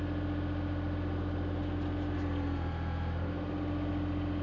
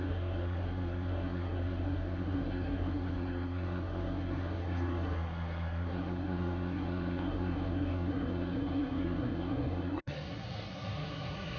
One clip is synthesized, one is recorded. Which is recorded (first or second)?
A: first